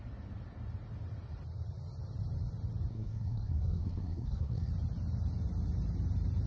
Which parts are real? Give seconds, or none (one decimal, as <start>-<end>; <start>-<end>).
0.0-2.9; 4.7-6.5